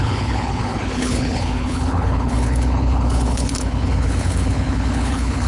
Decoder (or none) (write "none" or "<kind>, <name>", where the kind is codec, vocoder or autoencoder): codec, HILCodec